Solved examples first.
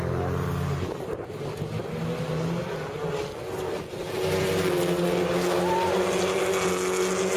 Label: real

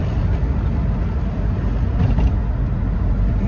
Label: real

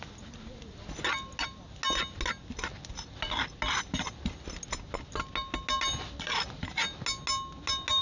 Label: real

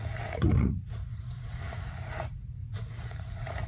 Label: fake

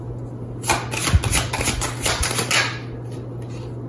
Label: real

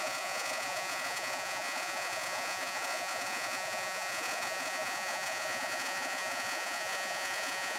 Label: fake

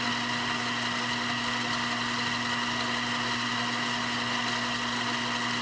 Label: real